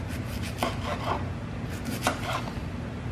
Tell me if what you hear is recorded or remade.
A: recorded